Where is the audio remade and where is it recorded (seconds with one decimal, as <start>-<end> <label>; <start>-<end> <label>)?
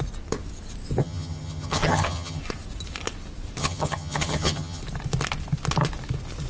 0.0-1.0 recorded; 1.0-2.4 remade; 2.4-3.6 recorded; 3.6-4.8 remade; 4.8-6.5 recorded